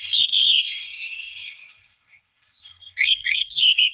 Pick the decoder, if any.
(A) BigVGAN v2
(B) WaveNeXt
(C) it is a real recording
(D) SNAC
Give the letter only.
D